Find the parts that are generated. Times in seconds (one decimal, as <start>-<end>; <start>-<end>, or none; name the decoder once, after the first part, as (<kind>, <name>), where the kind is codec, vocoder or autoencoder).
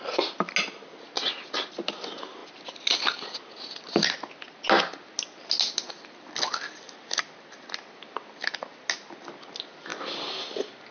none